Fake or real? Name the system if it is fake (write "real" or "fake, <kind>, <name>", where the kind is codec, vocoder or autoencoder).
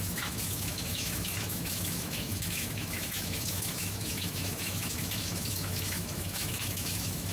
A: fake, autoencoder, DAC-VAE